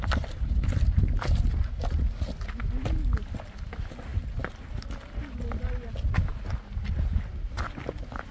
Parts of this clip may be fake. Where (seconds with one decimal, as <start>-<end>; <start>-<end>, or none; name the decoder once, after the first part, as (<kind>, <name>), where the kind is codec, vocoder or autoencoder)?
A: none